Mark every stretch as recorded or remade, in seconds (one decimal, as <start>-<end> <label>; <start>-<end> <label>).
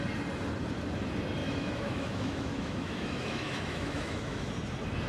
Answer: 0.0-1.4 recorded; 1.4-4.5 remade; 4.5-5.1 recorded